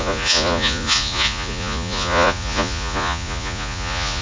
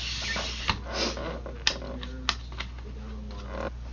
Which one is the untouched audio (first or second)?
second